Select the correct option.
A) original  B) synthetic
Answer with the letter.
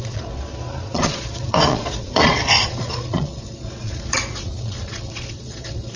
B